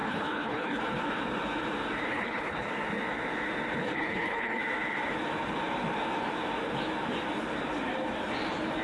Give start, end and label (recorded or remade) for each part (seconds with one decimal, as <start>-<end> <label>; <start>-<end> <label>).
0.0-0.8 remade; 0.8-2.1 recorded; 2.1-2.7 remade; 2.7-3.8 recorded; 3.8-4.6 remade; 4.6-8.8 recorded